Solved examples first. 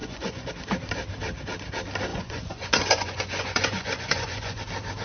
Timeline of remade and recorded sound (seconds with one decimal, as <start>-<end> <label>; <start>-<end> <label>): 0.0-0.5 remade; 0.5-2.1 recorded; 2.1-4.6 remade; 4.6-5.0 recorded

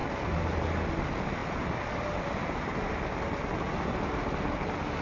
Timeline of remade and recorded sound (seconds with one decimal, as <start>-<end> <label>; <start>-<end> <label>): 0.0-5.0 recorded

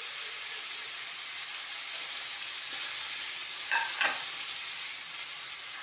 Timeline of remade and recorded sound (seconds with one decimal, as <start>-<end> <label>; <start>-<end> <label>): 0.0-5.8 recorded

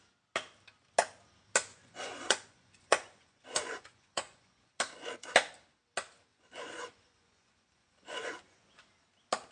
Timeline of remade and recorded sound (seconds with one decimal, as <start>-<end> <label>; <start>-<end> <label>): 0.0-1.7 recorded; 1.7-4.8 remade; 4.8-6.3 recorded; 6.3-8.7 remade; 8.7-9.5 recorded

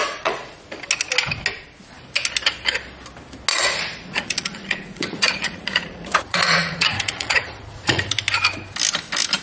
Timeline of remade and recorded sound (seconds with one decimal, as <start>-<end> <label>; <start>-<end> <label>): 0.0-0.6 remade; 0.6-3.5 recorded; 3.5-8.1 remade; 8.1-9.4 recorded

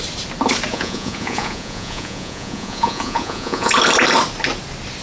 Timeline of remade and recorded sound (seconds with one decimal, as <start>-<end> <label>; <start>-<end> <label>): 0.0-0.7 recorded; 0.7-3.7 remade; 3.7-5.0 recorded